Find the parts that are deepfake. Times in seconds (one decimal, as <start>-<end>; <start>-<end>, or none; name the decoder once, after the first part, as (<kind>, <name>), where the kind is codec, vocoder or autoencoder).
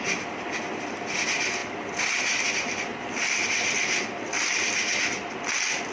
none